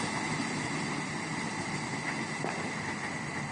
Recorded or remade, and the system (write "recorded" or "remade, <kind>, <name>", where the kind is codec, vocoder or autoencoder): recorded